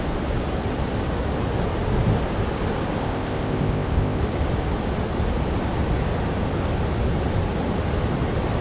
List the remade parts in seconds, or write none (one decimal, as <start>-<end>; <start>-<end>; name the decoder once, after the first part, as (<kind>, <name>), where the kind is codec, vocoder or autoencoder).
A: 3.0-4.2 (codec, ZipCodec)